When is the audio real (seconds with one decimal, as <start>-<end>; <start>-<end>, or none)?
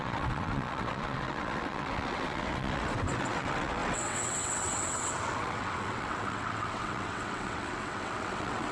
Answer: none